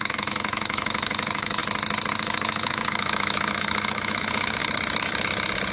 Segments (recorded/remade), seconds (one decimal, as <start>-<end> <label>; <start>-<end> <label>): 0.0-1.6 remade; 1.6-2.1 recorded; 2.1-4.6 remade; 4.6-5.7 recorded